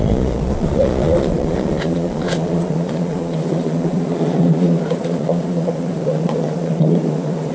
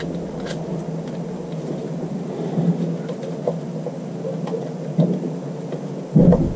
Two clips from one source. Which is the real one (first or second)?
second